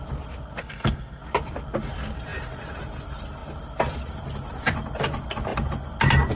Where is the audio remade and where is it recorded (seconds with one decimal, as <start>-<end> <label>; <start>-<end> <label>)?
0.0-0.6 recorded; 0.6-1.2 remade; 1.2-6.4 recorded